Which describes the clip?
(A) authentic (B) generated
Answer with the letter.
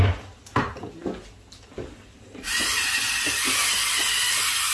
A